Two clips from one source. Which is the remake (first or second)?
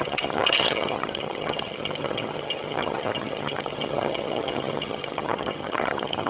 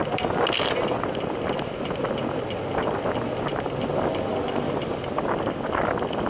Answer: first